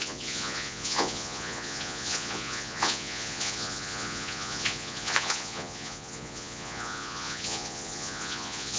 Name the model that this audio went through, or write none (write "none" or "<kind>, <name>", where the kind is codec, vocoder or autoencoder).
vocoder, Vocos